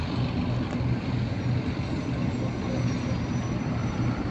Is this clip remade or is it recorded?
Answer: recorded